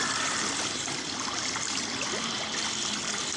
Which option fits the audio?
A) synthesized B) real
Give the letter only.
B